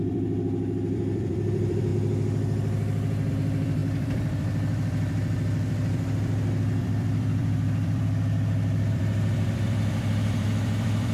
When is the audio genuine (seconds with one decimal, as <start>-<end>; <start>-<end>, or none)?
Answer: 1.9-3.3